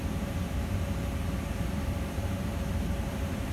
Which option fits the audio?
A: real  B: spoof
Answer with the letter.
B